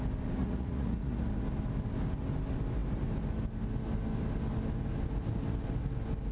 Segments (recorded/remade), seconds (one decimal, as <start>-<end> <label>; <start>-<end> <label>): 0.0-0.4 recorded; 0.4-1.3 remade; 1.3-6.3 recorded

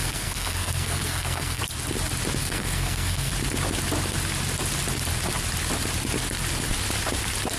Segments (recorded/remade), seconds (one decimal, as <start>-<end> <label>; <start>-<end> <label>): 0.0-1.6 remade; 1.6-2.4 recorded; 2.4-3.3 remade; 3.3-7.6 recorded

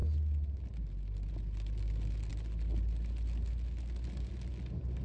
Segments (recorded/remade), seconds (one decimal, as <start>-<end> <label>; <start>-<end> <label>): 0.0-5.0 recorded

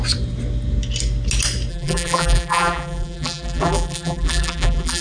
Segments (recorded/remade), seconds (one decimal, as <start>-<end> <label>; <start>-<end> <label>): 0.0-1.7 recorded; 1.7-5.0 remade

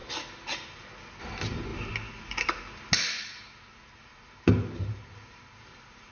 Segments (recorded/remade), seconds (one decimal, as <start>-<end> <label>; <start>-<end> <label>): 0.0-4.1 recorded; 4.1-6.1 remade

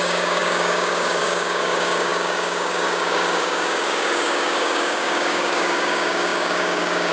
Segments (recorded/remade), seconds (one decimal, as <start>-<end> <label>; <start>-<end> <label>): 0.0-7.1 remade

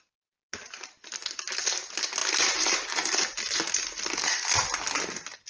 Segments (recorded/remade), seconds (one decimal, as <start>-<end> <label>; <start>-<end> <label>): 0.0-5.5 recorded

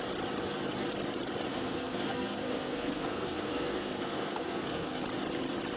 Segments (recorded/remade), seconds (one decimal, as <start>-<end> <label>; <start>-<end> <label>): 0.0-1.5 recorded; 1.5-5.0 remade; 5.0-5.8 recorded